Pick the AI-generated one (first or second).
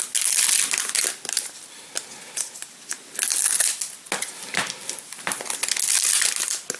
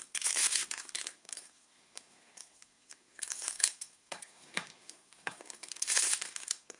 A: second